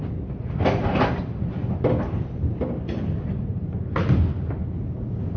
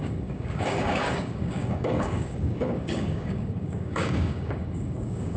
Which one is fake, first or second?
second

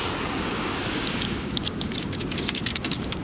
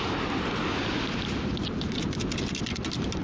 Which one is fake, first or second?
first